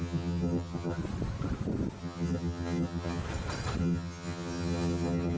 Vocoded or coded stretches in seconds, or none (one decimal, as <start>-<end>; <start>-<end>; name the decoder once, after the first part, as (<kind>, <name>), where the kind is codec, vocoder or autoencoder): 0.0-1.0 (vocoder, HiFi-GAN); 2.0-3.2; 3.8-5.4